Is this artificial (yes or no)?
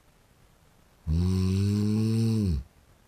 no